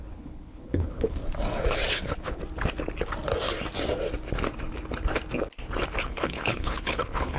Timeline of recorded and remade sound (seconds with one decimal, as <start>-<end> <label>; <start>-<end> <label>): 0.0-1.2 remade; 1.2-1.9 recorded; 1.9-2.4 remade; 2.4-6.0 recorded; 6.0-7.4 remade